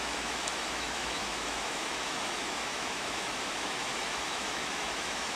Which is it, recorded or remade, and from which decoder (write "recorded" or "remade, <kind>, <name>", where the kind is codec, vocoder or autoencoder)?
remade, autoencoder, DAC-VAE